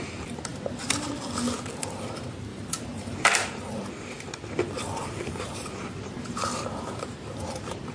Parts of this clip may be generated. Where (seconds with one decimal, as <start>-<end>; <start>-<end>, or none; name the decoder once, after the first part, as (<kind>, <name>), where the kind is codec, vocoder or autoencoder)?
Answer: 2.5-3.9 (vocoder, BigVGAN v2); 5.0-7.9